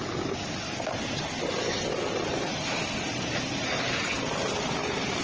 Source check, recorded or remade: recorded